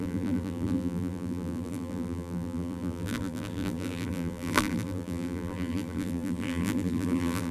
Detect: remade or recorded remade